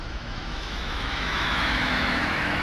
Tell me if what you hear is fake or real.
fake